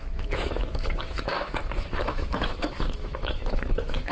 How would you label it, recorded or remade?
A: remade